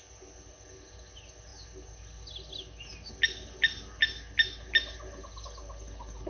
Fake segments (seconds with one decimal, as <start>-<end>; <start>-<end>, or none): none